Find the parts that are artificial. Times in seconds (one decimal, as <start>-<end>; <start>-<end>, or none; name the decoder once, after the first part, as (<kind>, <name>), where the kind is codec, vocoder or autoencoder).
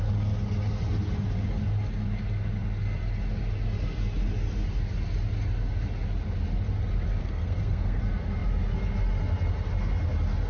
7.2-8.0 (codec, SNAC)